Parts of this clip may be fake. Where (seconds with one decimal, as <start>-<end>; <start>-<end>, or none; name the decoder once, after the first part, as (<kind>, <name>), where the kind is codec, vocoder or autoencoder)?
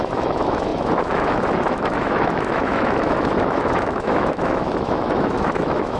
0.0-6.0 (autoencoder, DAC-VAE)